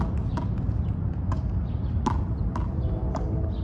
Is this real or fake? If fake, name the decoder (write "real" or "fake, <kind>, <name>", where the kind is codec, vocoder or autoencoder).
real